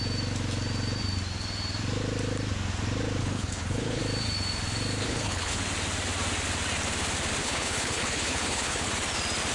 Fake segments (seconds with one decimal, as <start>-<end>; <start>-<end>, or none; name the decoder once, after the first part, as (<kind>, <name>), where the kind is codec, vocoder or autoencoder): 3.2-4.0 (codec, HILCodec); 5.0-5.6; 7.4-8.9